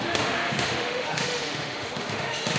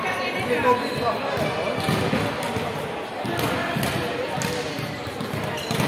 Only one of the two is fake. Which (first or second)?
first